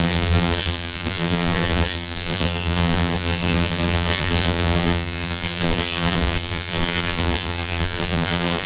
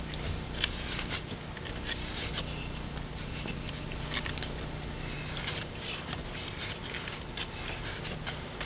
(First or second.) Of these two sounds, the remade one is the first